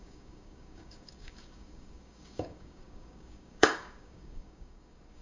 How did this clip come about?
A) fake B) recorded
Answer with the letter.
A